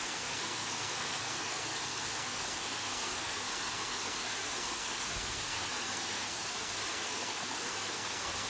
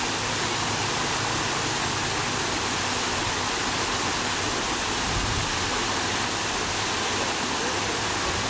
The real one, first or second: second